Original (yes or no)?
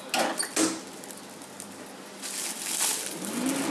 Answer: yes